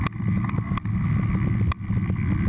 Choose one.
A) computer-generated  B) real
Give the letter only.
B